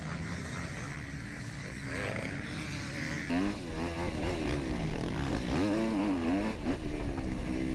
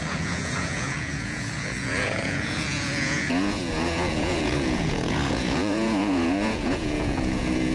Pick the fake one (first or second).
second